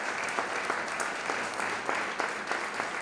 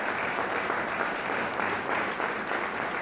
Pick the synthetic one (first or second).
second